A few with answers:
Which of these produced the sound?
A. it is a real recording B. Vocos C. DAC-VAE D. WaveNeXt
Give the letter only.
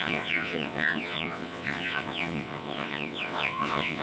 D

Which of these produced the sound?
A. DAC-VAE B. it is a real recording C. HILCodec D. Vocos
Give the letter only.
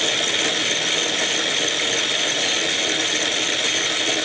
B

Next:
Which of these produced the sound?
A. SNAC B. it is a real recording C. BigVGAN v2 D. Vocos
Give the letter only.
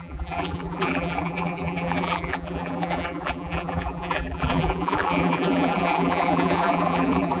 C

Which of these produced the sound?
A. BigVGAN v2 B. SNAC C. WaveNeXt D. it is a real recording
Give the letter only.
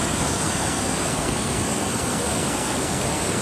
B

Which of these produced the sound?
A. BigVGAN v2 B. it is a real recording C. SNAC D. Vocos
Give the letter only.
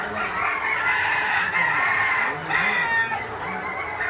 B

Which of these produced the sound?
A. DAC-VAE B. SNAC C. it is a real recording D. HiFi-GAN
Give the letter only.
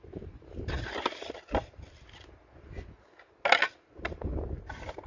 C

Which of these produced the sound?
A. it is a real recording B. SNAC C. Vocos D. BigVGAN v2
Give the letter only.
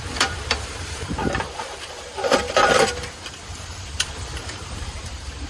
D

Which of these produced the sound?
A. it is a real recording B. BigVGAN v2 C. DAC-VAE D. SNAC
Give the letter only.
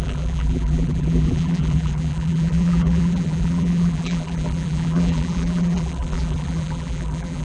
B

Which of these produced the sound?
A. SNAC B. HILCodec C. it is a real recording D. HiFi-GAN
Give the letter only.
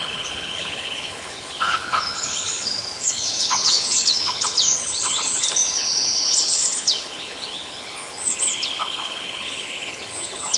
B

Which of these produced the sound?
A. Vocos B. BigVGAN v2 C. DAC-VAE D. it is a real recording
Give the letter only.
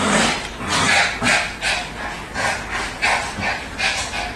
B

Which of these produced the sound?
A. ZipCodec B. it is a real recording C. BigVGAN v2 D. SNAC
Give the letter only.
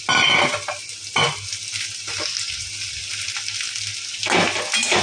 B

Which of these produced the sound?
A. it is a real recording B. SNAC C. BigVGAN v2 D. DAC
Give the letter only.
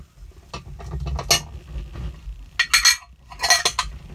A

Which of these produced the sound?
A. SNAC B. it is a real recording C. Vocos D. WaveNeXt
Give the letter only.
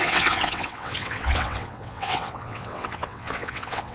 D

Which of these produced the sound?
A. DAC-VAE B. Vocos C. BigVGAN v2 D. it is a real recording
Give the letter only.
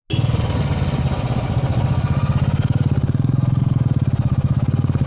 D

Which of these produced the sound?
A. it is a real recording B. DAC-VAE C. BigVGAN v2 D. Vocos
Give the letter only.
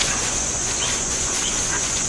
D